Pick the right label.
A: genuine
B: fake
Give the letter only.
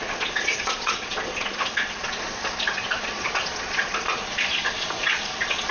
B